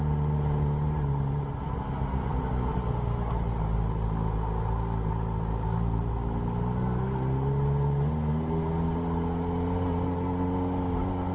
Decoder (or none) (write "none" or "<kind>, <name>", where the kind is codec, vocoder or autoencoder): none